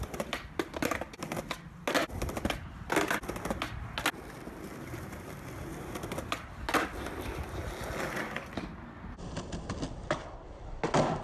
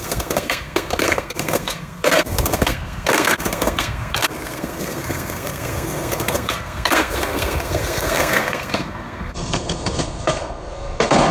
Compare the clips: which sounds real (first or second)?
first